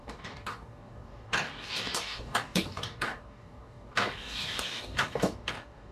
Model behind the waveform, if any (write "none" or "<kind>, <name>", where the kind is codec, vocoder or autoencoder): codec, DAC